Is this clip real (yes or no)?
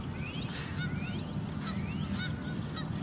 yes